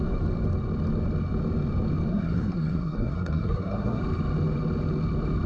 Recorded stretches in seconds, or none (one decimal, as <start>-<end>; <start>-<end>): 0.0-2.1; 4.0-5.5